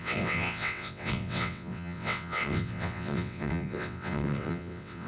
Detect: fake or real fake